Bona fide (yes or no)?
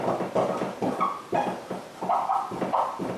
yes